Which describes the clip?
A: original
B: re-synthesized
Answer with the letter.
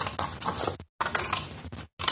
A